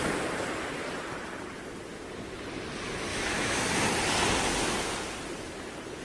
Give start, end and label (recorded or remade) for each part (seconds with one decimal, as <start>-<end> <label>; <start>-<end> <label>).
0.0-3.1 recorded; 3.1-3.6 remade; 3.6-6.0 recorded